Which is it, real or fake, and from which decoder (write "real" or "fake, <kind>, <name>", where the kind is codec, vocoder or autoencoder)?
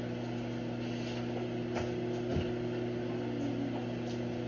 real